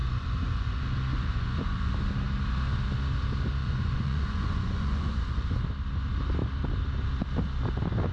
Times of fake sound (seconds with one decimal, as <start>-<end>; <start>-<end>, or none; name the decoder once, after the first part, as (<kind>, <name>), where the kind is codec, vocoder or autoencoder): 0.0-0.8 (vocoder, Vocos); 1.3-1.9; 3.6-5.7

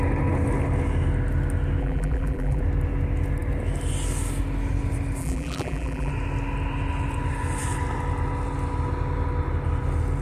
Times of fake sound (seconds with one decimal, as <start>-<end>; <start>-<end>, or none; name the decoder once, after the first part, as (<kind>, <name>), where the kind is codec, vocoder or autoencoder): 1.8-2.6 (vocoder, BigVGAN v2); 5.2-6.1

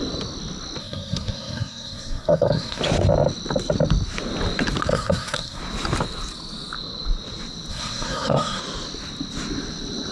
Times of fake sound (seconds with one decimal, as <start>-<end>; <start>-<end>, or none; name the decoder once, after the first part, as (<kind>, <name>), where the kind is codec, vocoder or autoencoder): 0.8-2.8 (codec, SNAC); 4.9-5.6; 7.7-8.6

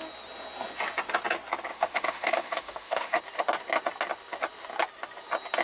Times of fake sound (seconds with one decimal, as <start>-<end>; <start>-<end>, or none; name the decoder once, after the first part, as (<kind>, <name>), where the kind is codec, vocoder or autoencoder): 1.7-3.2 (autoencoder, DAC-VAE)